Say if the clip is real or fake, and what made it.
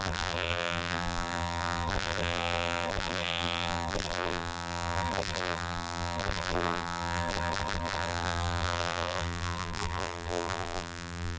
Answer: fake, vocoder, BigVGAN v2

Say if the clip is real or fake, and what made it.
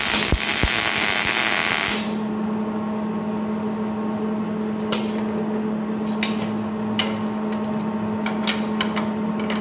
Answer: real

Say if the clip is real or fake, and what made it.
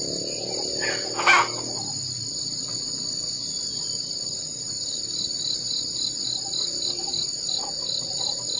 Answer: real